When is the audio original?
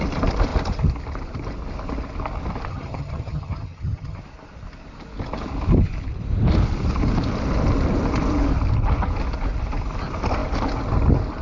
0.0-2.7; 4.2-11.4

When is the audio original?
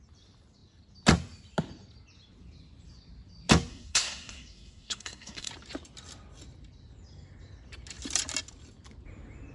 0.0-3.7; 5.5-9.5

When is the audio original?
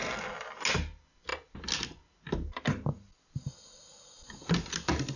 0.0-5.2